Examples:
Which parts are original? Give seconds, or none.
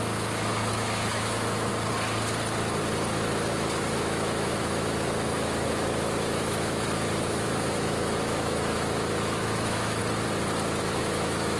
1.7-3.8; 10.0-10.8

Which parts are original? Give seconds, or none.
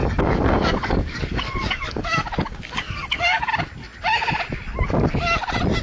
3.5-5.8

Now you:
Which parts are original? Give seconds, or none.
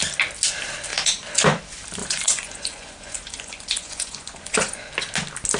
0.0-0.9; 1.6-2.0; 4.9-5.6